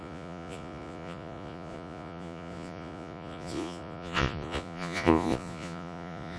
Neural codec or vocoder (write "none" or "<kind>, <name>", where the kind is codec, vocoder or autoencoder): vocoder, Vocos